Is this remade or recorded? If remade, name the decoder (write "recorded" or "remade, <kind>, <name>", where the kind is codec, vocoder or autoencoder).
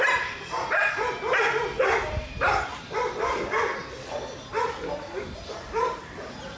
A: recorded